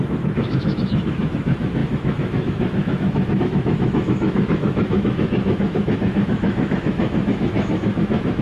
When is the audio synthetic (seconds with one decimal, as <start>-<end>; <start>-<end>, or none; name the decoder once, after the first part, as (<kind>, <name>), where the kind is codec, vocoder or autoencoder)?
0.0-8.4 (autoencoder, DAC-VAE)